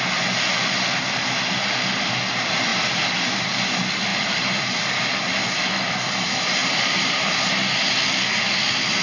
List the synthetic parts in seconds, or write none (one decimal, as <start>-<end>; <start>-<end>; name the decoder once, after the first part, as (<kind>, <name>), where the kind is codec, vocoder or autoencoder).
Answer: 2.7-3.6 (vocoder, BigVGAN v2); 4.1-4.8; 6.6-8.0